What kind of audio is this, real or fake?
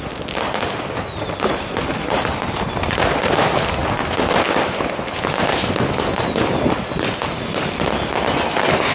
real